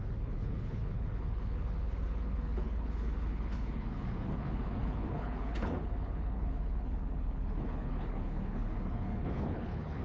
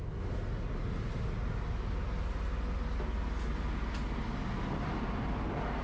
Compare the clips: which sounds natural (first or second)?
second